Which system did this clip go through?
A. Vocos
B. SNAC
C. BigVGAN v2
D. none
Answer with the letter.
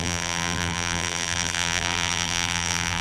C